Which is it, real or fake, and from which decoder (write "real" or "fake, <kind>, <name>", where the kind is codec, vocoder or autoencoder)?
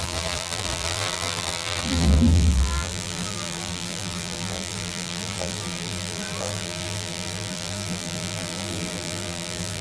fake, vocoder, BigVGAN v2